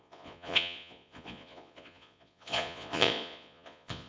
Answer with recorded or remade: remade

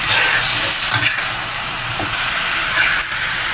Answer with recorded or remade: recorded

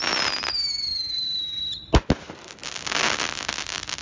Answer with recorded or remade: recorded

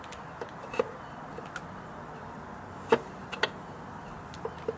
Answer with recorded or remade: recorded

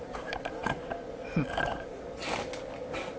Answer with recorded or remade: recorded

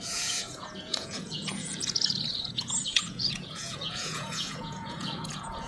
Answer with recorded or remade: remade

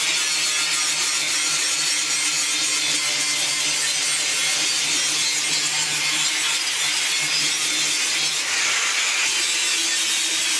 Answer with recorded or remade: recorded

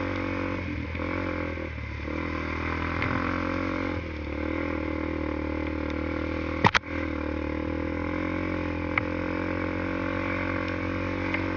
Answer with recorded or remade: recorded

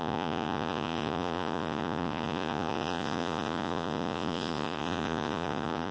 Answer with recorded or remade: remade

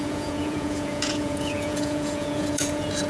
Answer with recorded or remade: remade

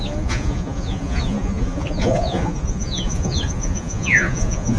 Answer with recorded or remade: remade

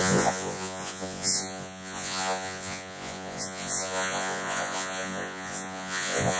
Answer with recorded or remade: remade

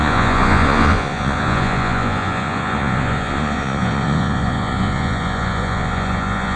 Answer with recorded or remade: remade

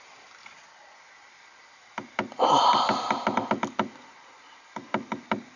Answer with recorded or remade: recorded